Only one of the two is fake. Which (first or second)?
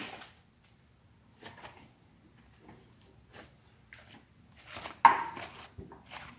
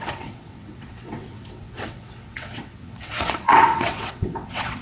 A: second